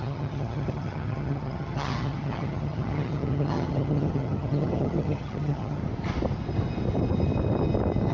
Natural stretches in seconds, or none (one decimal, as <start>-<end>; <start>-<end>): 5.8-8.1